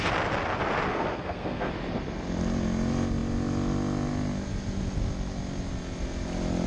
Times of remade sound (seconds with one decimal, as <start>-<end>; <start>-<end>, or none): 0.9-1.7